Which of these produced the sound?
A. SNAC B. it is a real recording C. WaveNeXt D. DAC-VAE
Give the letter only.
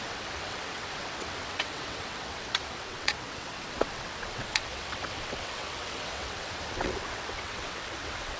C